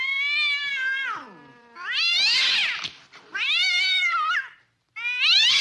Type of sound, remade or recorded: recorded